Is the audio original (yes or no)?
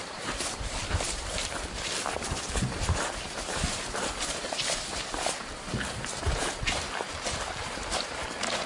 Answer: no